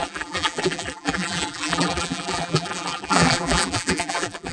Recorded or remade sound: remade